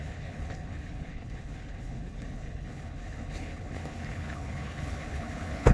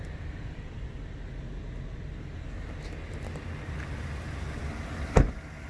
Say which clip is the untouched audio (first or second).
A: second